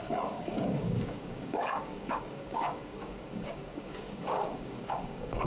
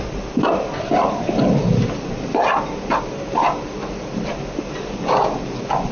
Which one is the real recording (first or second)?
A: second